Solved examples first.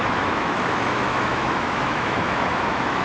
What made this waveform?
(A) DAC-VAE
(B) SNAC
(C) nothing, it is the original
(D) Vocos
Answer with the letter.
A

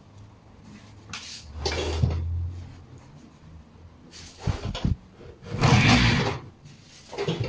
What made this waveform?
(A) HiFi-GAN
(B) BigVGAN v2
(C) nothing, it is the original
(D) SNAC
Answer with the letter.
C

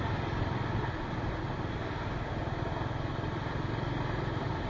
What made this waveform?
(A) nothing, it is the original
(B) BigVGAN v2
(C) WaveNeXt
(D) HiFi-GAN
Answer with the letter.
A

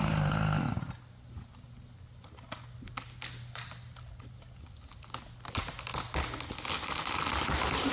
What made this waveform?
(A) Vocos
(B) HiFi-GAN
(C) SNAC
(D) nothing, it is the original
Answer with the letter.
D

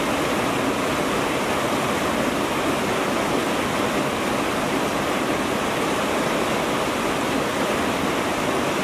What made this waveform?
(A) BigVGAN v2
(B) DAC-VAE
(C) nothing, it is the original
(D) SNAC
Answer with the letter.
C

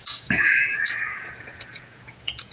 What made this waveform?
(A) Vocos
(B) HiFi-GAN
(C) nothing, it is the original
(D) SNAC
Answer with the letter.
A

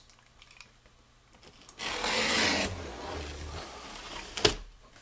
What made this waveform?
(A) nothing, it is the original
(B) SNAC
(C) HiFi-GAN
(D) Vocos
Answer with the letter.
A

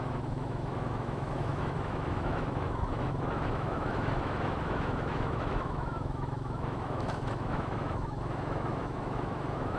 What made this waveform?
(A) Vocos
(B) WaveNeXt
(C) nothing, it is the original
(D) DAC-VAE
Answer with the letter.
D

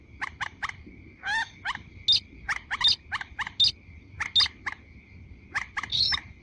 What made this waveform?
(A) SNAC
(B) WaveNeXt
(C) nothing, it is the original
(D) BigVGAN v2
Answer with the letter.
C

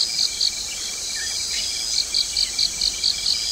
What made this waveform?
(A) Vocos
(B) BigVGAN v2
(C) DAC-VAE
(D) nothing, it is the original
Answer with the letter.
D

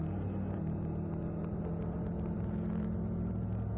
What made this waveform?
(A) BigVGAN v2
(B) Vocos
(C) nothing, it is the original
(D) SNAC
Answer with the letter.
C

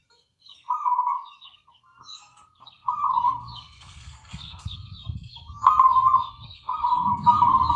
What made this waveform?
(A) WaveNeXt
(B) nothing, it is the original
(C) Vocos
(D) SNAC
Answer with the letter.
D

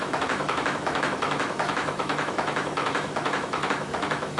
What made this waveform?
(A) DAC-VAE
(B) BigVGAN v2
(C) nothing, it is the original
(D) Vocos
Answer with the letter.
A